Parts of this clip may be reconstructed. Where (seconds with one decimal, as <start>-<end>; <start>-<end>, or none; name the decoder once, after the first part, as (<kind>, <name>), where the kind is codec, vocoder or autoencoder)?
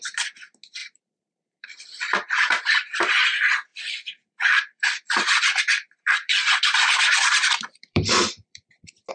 0.8-2.6 (vocoder, BigVGAN v2); 3.7-9.1